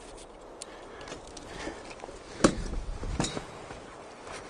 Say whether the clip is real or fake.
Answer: real